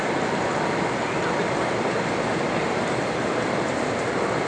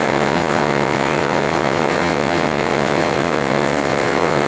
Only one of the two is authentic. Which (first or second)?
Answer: first